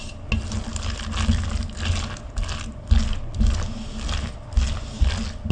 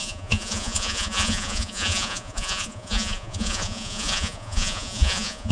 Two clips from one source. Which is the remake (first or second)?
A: second